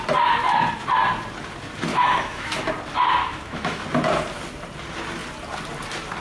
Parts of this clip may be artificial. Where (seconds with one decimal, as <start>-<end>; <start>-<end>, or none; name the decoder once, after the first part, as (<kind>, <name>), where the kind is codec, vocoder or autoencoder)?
1.9-2.6 (autoencoder, DAC-VAE); 3.2-3.8